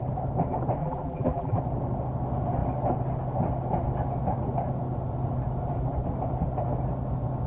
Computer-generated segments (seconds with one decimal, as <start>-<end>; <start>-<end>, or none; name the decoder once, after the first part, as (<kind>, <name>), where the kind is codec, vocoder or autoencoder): 0.8-1.6 (vocoder, BigVGAN v2)